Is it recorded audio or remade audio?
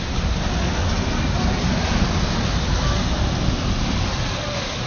recorded